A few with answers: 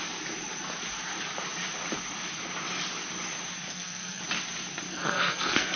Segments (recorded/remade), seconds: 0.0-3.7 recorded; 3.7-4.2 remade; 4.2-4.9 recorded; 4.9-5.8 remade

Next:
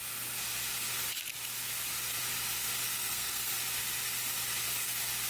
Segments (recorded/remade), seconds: 0.0-2.9 recorded; 2.9-3.5 remade; 3.5-5.3 recorded

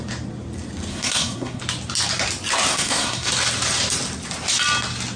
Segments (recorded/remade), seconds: 0.0-0.9 recorded; 0.9-1.6 remade; 1.6-2.7 recorded; 2.7-3.3 remade; 3.3-5.2 recorded

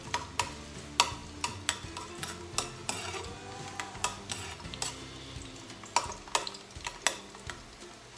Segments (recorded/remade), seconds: 0.0-8.2 recorded

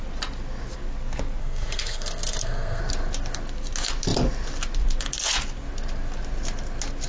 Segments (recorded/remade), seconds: 0.0-1.4 recorded; 1.4-2.8 remade; 2.8-7.1 recorded

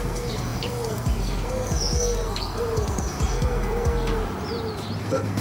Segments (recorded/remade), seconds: 0.0-4.2 remade; 4.2-5.0 recorded; 5.0-5.4 remade